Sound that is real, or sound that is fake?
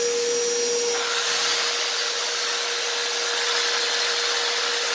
real